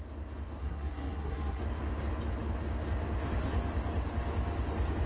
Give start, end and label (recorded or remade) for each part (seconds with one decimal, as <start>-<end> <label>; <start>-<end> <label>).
0.0-0.6 recorded; 0.6-1.6 remade; 1.6-5.1 recorded